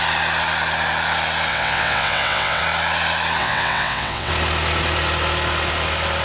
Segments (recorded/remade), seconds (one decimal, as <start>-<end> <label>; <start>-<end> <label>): 0.0-1.5 recorded; 1.5-2.6 remade; 2.6-3.4 recorded; 3.4-4.3 remade; 4.3-6.2 recorded